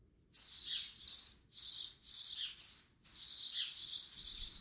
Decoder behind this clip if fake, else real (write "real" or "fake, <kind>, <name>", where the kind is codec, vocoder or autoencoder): real